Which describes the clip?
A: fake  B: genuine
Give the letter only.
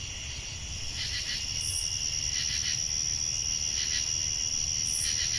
B